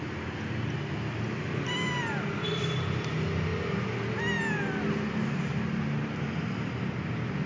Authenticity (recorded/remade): recorded